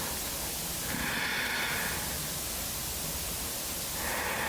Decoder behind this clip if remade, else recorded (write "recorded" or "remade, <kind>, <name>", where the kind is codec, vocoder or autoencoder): recorded